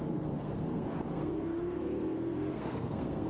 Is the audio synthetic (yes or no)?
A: yes